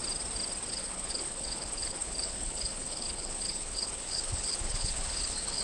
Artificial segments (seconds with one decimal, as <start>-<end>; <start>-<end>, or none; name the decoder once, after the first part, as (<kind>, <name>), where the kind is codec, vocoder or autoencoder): 0.7-5.6 (codec, HILCodec)